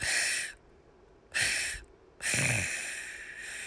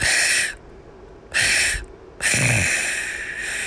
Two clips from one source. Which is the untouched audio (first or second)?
second